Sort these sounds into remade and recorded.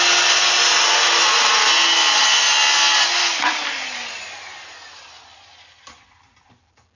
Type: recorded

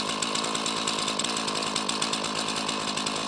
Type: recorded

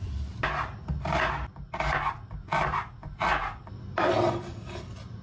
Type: recorded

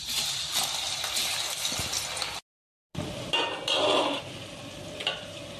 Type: recorded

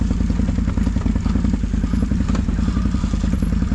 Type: recorded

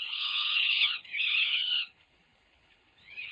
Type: remade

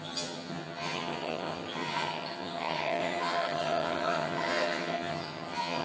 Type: remade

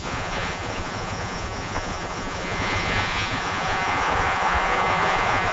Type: remade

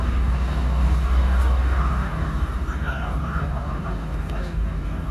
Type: remade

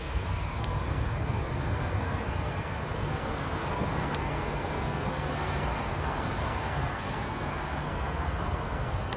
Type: remade